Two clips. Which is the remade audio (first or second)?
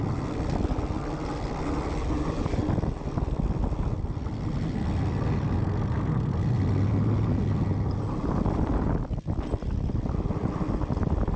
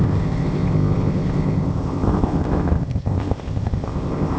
second